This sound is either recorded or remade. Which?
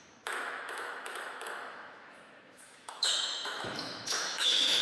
remade